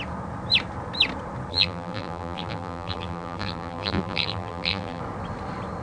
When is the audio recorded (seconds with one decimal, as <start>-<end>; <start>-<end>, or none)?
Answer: 0.0-1.5; 5.0-5.8